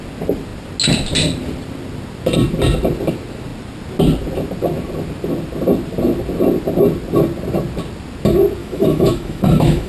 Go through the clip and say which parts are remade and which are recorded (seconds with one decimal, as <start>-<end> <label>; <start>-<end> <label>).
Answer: 0.0-8.6 recorded; 8.6-9.9 remade